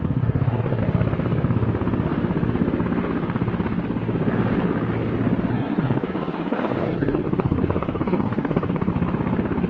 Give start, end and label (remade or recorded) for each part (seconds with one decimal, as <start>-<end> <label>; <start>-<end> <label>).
0.0-0.8 remade; 0.8-5.5 recorded; 5.5-8.9 remade; 8.9-9.7 recorded